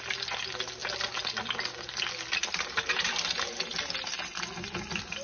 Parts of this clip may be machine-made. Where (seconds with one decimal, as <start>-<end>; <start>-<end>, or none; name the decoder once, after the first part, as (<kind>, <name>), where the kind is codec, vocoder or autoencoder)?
none